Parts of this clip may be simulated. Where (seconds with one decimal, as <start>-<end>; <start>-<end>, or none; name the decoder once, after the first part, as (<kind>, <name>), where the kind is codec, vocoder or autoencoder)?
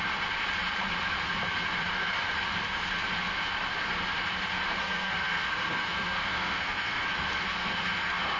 4.8-7.1 (codec, SNAC); 7.5-8.4